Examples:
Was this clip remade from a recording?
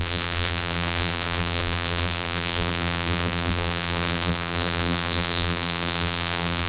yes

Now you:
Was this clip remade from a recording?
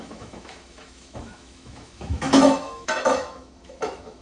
yes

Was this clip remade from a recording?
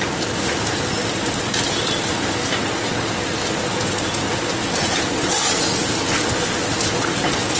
no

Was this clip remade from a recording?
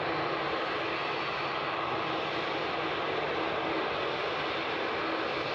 no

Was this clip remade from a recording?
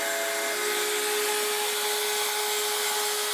no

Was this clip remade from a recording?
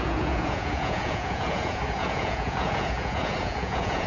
yes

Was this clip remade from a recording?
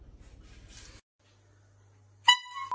no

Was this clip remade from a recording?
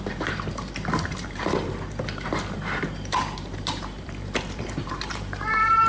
yes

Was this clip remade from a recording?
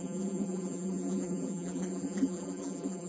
yes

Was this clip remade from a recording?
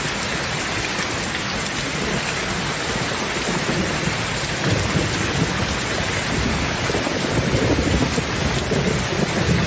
no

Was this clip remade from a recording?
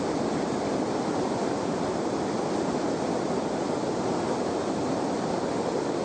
no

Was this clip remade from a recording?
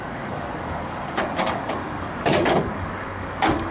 yes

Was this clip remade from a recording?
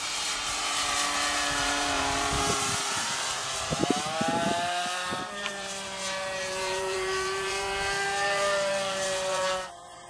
yes